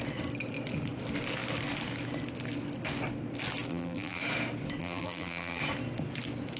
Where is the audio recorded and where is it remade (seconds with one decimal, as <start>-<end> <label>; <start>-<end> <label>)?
0.0-3.7 recorded; 3.7-4.2 remade; 4.2-4.8 recorded; 4.8-5.6 remade; 5.6-6.6 recorded